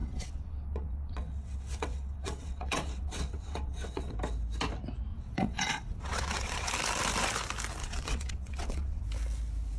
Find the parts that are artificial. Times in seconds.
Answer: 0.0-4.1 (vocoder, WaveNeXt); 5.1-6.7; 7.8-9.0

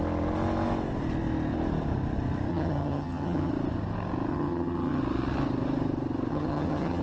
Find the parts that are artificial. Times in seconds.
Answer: 2.5-3.5 (vocoder, HiFi-GAN); 4.3-5.0; 6.3-7.0

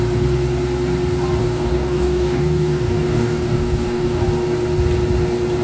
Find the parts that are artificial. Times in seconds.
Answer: 1.4-4.2 (codec, DAC)

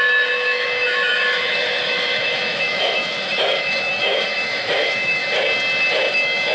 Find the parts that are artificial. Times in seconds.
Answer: 0.0-5.2 (autoencoder, DAC-VAE); 6.1-6.5

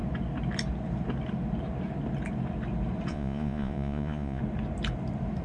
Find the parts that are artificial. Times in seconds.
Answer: 3.1-4.4 (vocoder, Vocos)

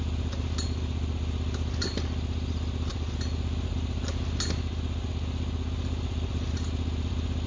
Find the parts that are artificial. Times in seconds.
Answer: none

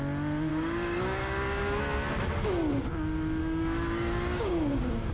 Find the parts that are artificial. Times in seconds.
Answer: 0.5-1.8 (codec, DAC); 3.4-5.1